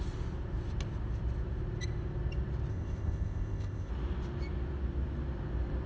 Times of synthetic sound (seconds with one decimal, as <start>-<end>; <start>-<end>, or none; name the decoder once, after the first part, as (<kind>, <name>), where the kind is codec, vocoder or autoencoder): 2.7-3.9 (codec, ZipCodec)